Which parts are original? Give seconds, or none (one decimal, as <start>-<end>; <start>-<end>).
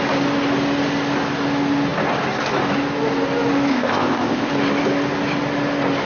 0.0-3.7; 4.5-6.1